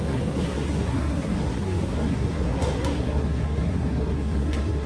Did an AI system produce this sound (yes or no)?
yes